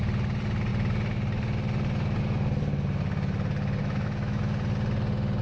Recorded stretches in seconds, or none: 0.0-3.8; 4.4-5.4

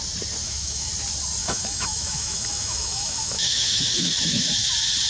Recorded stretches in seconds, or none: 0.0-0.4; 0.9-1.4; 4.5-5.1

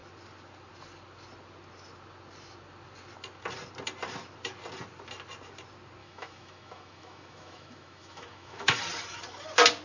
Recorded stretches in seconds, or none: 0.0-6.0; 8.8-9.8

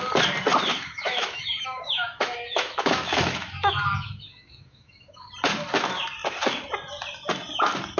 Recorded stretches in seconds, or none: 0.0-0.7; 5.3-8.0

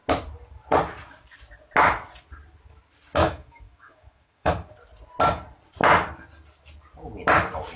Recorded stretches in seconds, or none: 0.0-3.2; 4.5-7.8

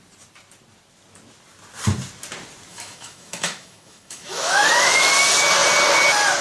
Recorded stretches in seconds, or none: 0.0-2.7; 5.1-6.4

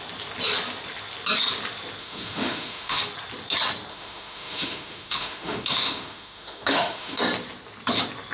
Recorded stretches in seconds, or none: 0.0-2.0; 3.0-3.9; 7.2-8.3